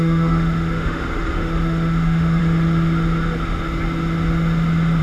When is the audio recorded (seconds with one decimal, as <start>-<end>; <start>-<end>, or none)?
2.4-5.0